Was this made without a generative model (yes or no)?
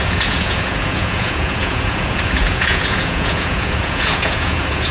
no